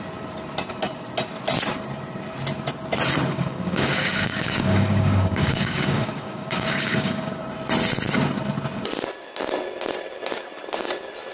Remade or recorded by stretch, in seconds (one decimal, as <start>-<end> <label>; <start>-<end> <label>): 0.0-3.3 recorded; 3.3-7.4 remade; 7.4-11.3 recorded